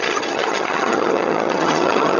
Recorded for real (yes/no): no